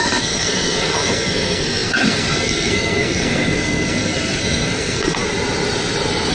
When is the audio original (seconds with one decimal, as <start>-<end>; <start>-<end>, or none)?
5.2-6.3